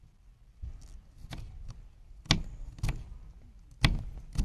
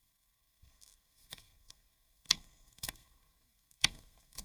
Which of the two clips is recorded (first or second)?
first